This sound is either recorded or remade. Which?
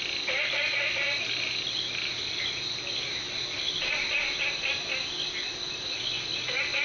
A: recorded